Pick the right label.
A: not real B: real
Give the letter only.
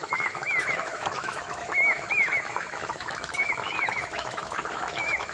A